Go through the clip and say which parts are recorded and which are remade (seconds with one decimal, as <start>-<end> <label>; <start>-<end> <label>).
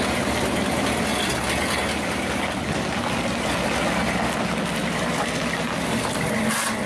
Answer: 0.0-6.9 recorded